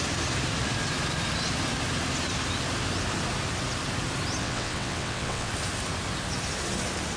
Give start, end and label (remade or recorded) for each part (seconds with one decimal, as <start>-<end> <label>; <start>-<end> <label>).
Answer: 0.0-4.4 recorded; 4.4-5.5 remade; 5.5-7.2 recorded